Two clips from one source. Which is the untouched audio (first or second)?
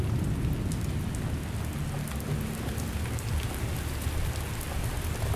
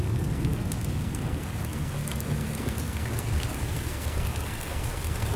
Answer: first